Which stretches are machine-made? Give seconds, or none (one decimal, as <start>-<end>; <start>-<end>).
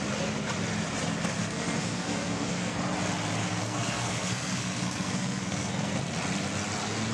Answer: 1.4-2.8; 3.4-6.0